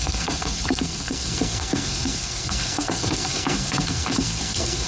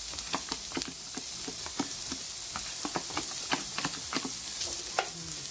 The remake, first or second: first